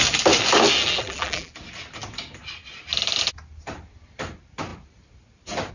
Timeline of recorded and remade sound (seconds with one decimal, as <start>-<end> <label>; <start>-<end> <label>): 0.0-1.0 recorded; 1.0-1.5 remade; 1.5-5.7 recorded

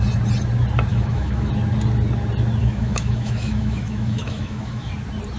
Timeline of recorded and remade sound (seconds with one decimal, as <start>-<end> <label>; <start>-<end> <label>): 0.0-0.9 recorded; 0.9-1.5 remade; 1.5-2.6 recorded; 2.6-4.9 remade; 4.9-5.4 recorded

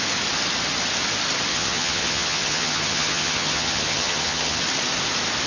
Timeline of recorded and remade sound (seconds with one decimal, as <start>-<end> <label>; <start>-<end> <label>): 0.0-1.5 recorded; 1.5-4.6 remade; 4.6-5.5 recorded

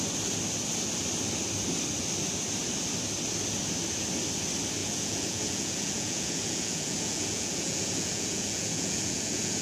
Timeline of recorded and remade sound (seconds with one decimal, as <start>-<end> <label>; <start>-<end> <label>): 0.0-4.8 recorded; 4.8-9.6 remade

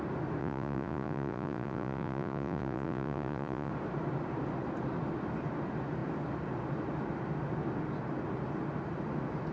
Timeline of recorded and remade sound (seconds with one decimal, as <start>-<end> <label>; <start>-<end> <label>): 0.0-0.4 recorded; 0.4-3.7 remade; 3.7-9.5 recorded

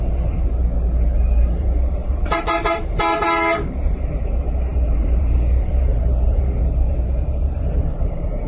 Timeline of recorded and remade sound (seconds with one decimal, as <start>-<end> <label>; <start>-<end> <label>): 0.0-0.6 remade; 0.6-1.4 recorded; 1.4-8.5 remade

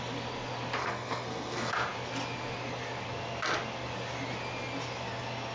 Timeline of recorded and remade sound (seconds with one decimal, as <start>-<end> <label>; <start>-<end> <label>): 0.0-0.8 recorded; 0.8-1.7 remade; 1.7-5.5 recorded

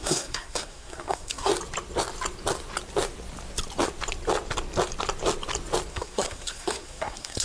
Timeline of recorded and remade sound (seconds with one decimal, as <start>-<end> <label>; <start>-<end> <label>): 0.0-1.5 remade; 1.5-5.9 recorded; 5.9-7.4 remade